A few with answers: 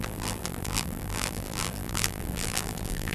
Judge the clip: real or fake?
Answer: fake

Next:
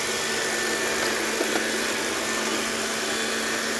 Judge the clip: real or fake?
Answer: real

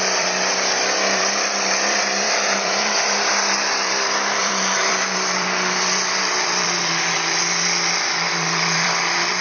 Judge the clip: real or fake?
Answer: fake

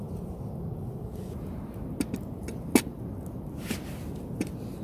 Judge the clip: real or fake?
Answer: real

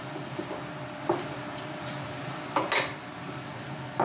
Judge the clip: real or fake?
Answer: fake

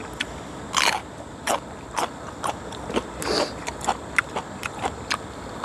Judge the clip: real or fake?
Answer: real